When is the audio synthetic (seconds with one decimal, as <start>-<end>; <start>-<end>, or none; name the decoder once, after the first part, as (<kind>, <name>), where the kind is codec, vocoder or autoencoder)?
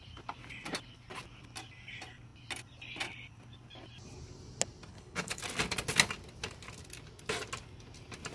4.9-5.4 (codec, HILCodec)